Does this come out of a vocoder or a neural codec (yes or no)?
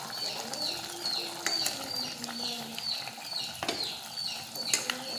no